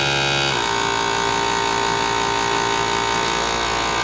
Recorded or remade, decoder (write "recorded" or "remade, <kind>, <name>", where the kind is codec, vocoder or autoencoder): recorded